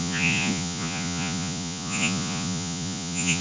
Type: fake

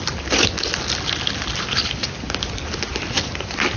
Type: real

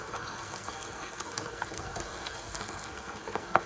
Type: fake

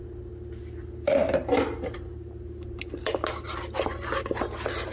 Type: real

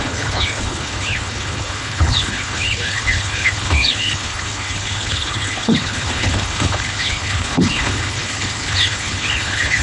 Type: fake